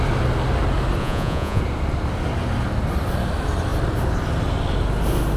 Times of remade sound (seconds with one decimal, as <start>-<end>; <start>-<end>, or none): 1.0-1.6